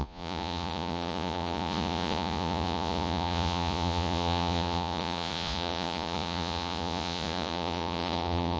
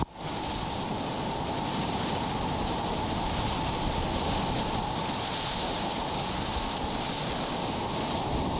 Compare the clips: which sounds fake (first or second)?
first